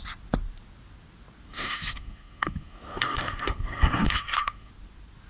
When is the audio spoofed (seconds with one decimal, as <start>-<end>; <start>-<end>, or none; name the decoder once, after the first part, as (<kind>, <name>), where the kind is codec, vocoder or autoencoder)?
1.5-4.7 (codec, SNAC)